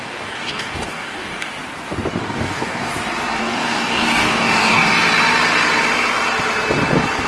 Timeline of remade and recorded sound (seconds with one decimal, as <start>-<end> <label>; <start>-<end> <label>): 0.0-1.5 remade; 1.5-2.2 recorded; 2.2-2.9 remade; 2.9-3.4 recorded; 3.4-4.8 remade; 4.8-7.3 recorded